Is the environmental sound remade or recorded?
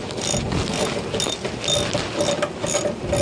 recorded